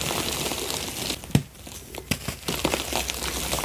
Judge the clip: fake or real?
real